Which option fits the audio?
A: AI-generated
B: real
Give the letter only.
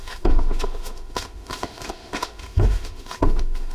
A